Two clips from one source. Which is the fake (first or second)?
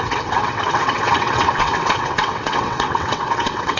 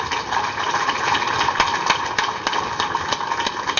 first